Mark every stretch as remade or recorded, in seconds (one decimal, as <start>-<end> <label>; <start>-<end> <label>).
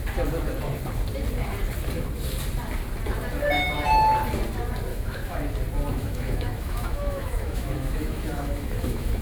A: 0.0-4.9 recorded; 4.9-5.5 remade; 5.5-5.9 recorded; 5.9-9.2 remade